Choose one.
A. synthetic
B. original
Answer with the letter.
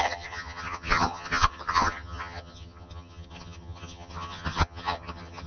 A